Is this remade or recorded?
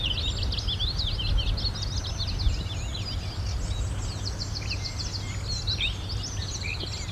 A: recorded